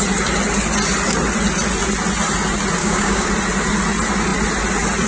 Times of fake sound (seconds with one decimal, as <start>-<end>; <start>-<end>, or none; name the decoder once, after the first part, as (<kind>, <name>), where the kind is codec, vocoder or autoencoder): 2.8-3.3 (codec, DAC)